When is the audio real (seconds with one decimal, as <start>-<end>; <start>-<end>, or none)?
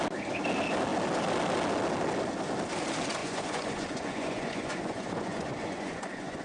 0.0-3.2